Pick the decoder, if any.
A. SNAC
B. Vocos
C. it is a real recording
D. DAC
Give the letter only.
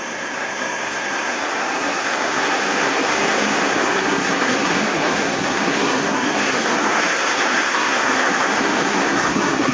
A